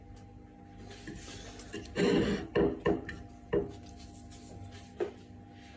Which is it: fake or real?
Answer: real